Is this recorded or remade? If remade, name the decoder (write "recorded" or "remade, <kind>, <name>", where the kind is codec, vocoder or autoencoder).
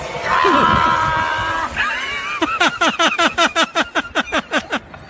recorded